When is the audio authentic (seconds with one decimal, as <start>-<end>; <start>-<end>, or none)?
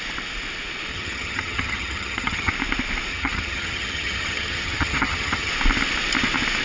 0.0-0.9; 2.5-3.1; 5.5-6.6